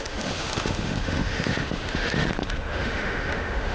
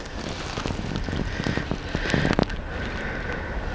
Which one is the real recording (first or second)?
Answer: second